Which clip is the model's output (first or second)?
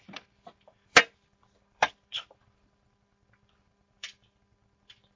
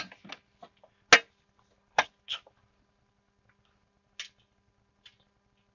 first